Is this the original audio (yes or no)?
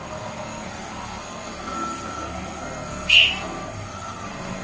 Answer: no